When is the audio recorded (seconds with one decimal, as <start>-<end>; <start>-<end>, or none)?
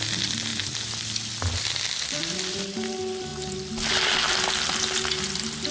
0.0-5.7